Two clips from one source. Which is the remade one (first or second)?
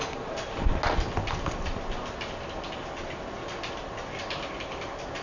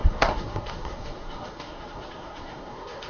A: second